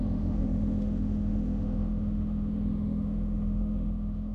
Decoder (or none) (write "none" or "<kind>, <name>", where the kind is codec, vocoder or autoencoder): autoencoder, DAC-VAE